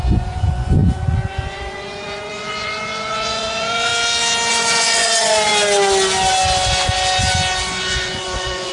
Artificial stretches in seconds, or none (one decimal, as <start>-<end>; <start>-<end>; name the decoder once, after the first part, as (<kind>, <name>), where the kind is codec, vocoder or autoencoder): 0.0-3.9 (vocoder, Vocos); 4.5-5.5; 7.6-8.7